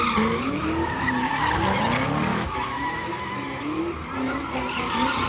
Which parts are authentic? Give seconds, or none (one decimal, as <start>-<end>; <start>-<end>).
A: 0.0-2.3; 3.8-5.3